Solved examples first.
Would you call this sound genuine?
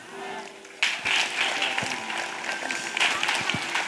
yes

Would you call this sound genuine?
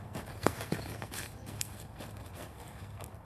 no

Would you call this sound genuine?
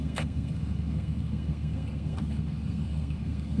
no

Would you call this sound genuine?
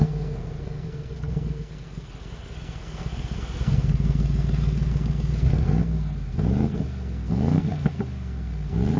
no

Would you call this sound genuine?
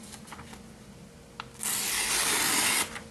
yes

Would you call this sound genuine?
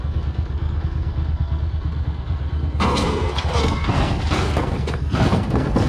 no